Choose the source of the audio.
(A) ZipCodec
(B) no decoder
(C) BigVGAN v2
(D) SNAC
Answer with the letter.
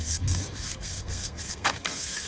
D